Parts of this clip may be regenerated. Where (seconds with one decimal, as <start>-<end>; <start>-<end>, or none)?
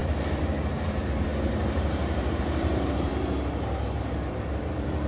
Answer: 0.0-3.1; 4.3-5.1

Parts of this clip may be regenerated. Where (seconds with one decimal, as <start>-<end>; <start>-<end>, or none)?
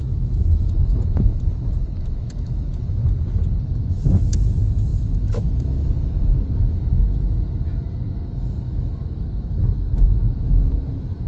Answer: 0.0-3.0; 3.6-11.3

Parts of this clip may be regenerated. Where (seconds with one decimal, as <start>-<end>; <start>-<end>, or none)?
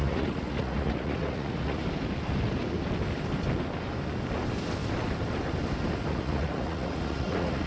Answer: 0.0-1.8; 6.1-7.7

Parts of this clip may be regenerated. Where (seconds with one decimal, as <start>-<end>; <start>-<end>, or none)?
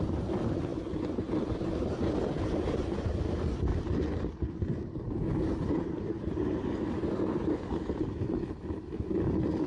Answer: none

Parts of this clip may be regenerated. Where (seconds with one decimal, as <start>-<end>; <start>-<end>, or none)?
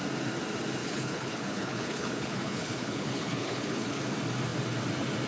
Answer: 0.8-4.0